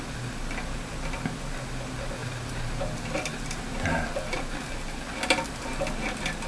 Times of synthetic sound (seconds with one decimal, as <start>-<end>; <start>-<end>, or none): 2.2-4.5